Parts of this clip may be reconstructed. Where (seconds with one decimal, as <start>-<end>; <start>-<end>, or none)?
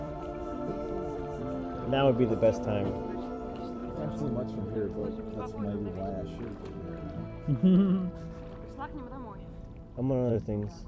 0.0-3.8; 4.6-5.0; 10.3-10.9